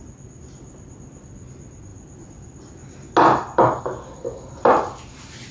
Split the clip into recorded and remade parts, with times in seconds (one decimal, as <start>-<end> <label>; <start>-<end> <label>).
0.0-5.5 recorded